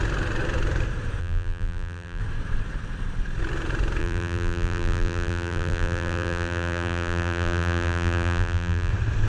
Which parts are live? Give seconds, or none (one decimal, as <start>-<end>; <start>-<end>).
0.0-1.2; 2.2-4.0; 8.9-9.3